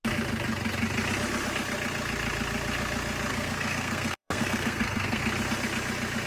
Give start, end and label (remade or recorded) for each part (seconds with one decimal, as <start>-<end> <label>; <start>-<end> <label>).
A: 0.0-3.3 recorded; 3.3-5.2 remade; 5.2-6.3 recorded